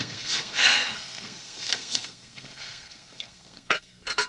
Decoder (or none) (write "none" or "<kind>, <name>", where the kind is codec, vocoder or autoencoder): codec, SNAC